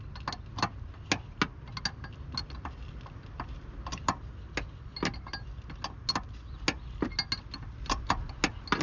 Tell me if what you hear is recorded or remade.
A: recorded